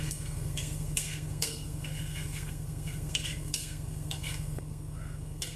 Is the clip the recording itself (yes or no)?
no